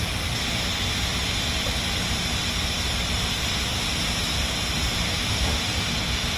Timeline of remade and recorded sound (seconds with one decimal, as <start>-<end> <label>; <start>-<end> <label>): 0.0-6.4 recorded